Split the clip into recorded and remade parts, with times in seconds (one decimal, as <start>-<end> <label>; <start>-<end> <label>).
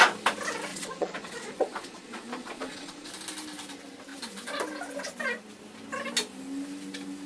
0.0-0.7 recorded; 0.7-3.1 remade; 3.1-7.3 recorded